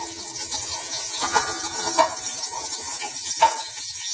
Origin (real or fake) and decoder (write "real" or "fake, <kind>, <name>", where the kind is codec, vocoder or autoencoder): fake, vocoder, Vocos